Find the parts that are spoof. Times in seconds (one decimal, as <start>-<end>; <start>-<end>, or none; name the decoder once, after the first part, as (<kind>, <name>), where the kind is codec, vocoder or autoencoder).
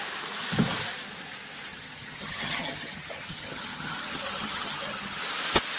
1.7-5.2 (vocoder, HiFi-GAN)